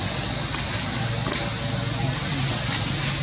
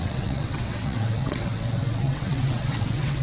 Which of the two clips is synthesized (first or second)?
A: second